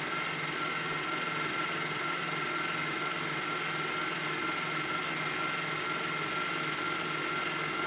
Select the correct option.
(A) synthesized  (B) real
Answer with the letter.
B